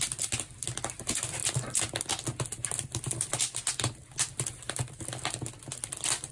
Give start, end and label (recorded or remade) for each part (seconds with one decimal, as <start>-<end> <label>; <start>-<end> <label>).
0.0-6.3 recorded